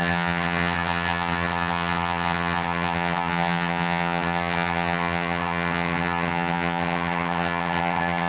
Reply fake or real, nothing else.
fake